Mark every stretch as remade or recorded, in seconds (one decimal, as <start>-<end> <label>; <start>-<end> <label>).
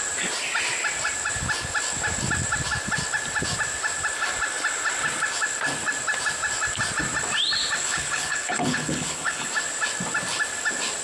0.0-7.8 recorded; 7.8-9.5 remade; 9.5-11.0 recorded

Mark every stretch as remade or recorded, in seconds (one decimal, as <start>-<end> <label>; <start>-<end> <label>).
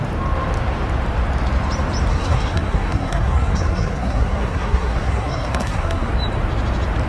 0.0-2.1 recorded; 2.1-6.1 remade; 6.1-7.1 recorded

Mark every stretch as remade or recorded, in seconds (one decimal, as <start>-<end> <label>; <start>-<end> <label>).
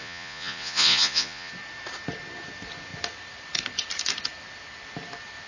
0.0-1.5 remade; 1.5-5.5 recorded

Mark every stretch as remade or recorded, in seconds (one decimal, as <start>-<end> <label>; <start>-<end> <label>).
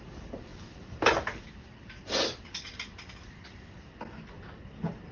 0.0-5.1 recorded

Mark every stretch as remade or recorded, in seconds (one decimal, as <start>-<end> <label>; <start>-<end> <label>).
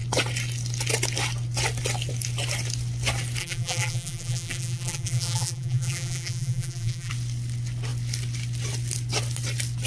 0.0-3.4 recorded; 3.4-7.1 remade; 7.1-9.9 recorded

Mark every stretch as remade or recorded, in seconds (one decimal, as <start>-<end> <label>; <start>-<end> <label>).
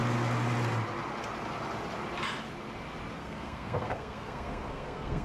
0.0-3.1 recorded; 3.1-5.2 remade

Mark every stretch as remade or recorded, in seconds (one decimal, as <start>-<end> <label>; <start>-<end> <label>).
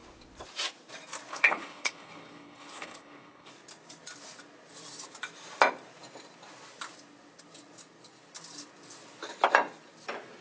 0.0-1.3 recorded; 1.3-3.5 remade; 3.5-10.4 recorded